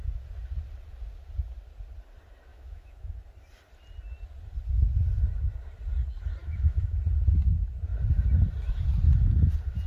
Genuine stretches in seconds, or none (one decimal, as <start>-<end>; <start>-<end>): 0.0-2.5; 3.1-6.4; 7.0-9.9